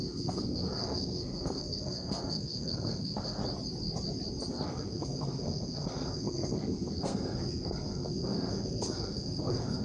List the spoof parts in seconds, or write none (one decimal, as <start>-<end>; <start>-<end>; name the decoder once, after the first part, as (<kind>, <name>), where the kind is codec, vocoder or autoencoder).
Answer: 0.0-3.4 (codec, SNAC); 4.5-9.8